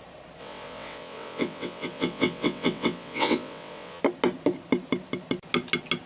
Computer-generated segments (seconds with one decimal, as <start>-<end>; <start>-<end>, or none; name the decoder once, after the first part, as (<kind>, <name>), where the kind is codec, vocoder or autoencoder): 0.4-4.0 (vocoder, WaveNeXt)